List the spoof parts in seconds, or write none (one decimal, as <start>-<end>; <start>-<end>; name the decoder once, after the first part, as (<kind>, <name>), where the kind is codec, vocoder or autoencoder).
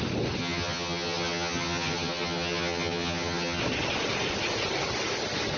0.4-3.6 (vocoder, HiFi-GAN)